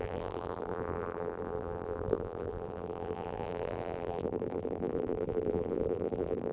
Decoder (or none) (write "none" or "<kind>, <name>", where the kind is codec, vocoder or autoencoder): vocoder, BigVGAN v2